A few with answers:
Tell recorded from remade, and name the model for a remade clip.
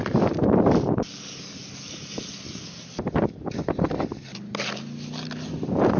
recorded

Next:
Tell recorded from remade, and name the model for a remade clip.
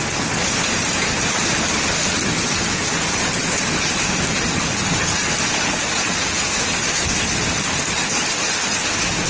recorded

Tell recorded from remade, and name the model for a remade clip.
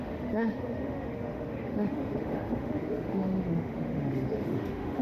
remade, autoencoder, DAC-VAE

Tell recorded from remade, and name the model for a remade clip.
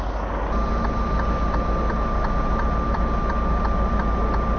recorded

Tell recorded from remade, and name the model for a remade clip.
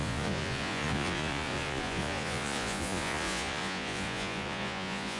remade, vocoder, Vocos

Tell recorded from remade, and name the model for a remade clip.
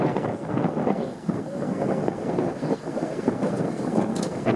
remade, codec, SNAC